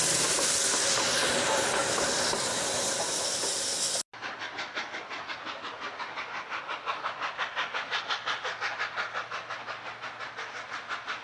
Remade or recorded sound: recorded